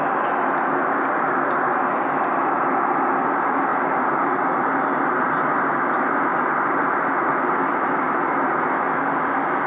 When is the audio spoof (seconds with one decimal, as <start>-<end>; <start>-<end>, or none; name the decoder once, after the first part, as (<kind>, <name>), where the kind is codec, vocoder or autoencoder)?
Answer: none